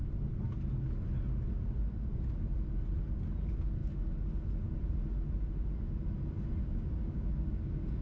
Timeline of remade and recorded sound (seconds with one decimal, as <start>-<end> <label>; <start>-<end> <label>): 0.0-6.6 recorded; 6.6-8.0 remade